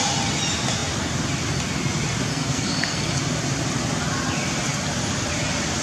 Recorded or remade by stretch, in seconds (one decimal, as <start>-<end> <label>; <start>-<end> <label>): 0.0-2.3 recorded; 2.3-3.1 remade; 3.1-5.8 recorded